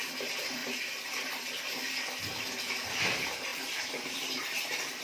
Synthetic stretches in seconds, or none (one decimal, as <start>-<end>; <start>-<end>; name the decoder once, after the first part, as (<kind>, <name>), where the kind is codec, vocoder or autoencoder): 0.0-0.6 (vocoder, BigVGAN v2); 2.9-5.0